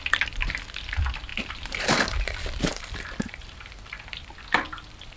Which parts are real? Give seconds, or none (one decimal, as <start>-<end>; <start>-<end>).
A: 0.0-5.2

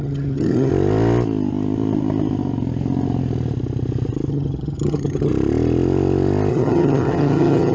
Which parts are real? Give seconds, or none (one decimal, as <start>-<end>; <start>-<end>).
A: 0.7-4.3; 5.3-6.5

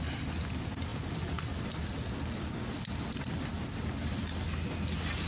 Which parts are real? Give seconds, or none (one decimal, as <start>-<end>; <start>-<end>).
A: 0.0-5.3